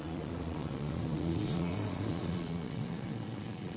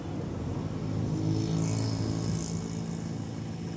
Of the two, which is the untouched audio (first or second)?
second